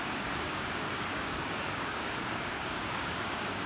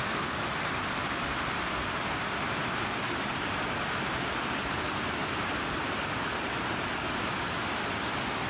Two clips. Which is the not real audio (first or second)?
first